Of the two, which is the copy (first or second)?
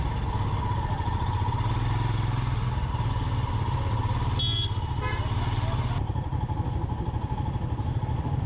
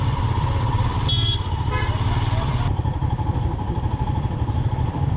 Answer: second